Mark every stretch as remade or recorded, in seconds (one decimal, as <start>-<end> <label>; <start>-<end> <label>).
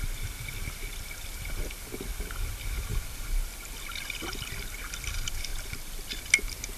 0.0-2.9 recorded; 2.9-3.4 remade; 3.4-5.5 recorded; 5.5-6.2 remade; 6.2-6.8 recorded